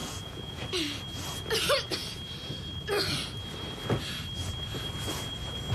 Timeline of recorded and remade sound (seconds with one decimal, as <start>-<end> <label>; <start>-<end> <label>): 0.0-0.7 remade; 0.7-5.7 recorded